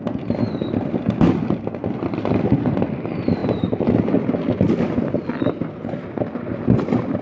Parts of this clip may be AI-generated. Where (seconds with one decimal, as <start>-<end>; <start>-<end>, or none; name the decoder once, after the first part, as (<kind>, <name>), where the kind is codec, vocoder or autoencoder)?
none